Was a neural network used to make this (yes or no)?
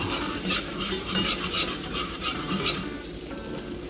yes